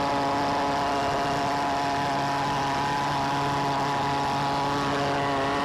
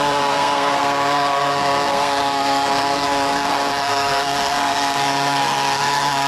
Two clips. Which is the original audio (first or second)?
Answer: first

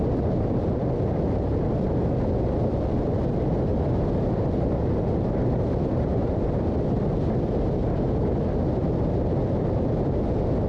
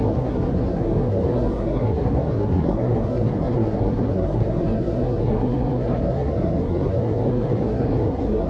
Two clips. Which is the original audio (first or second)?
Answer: first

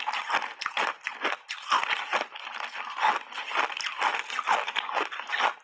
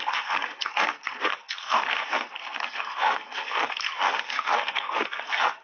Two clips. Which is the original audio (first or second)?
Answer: first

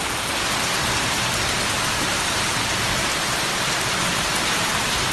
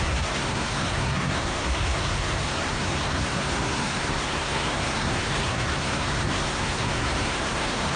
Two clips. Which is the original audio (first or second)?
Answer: first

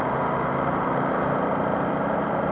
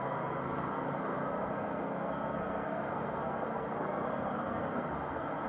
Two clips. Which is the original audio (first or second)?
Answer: first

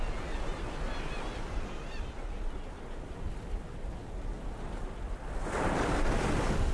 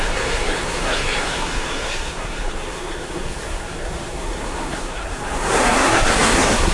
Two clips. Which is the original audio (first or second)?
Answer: first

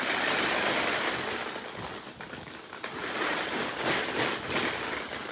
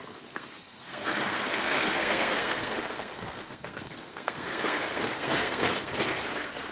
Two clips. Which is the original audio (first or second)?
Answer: first